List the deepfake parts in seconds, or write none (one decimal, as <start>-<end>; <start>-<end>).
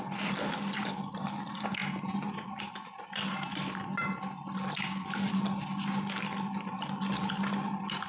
none